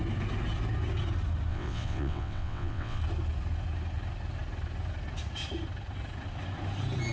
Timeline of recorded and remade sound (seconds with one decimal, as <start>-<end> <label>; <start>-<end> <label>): 0.0-1.5 recorded; 1.5-3.0 remade; 3.0-7.1 recorded